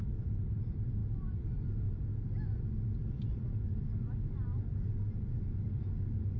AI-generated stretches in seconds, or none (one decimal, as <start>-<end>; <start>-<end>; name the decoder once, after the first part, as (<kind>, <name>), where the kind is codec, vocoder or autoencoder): none